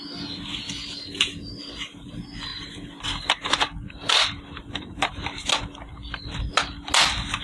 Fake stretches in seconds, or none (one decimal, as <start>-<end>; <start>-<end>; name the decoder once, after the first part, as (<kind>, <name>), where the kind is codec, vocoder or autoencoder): none